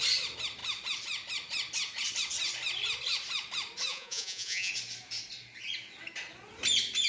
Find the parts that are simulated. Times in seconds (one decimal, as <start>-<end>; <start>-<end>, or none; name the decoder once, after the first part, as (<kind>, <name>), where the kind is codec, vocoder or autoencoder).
3.9-4.7 (vocoder, Vocos)